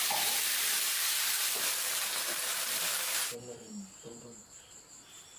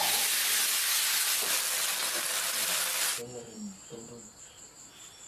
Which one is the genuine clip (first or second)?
second